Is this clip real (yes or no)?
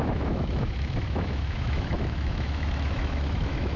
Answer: no